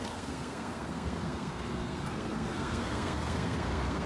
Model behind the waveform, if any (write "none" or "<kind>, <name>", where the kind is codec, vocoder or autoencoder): codec, SNAC